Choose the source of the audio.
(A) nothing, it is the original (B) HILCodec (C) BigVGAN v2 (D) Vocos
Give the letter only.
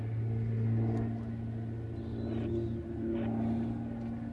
A